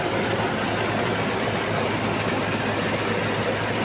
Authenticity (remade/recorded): recorded